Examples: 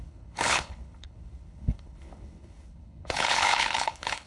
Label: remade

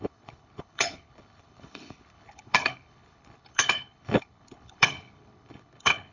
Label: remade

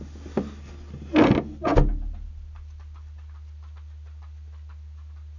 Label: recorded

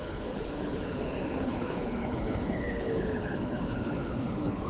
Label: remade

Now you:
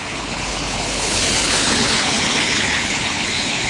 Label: remade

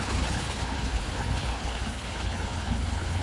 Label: remade